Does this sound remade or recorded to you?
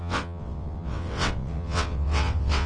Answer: remade